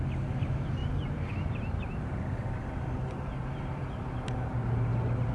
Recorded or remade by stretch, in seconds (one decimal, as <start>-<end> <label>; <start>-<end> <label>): 0.0-5.3 recorded